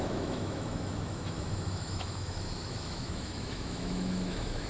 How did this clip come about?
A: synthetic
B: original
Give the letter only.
A